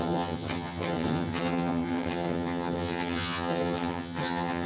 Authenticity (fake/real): fake